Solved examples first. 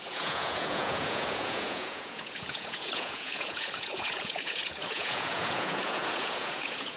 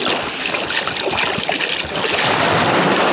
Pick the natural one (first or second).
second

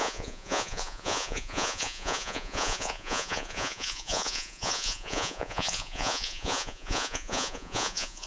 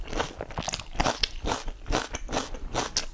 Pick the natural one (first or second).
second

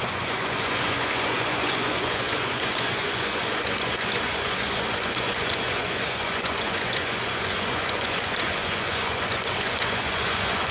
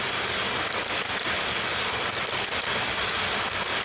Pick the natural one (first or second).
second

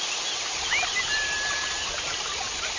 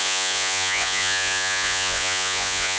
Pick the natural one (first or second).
first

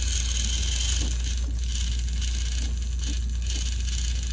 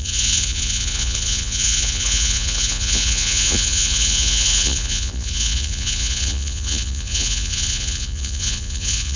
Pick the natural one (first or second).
first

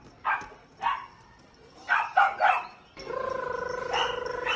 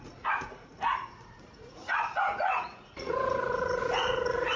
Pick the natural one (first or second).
first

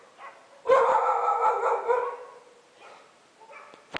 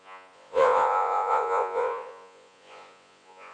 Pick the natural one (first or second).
first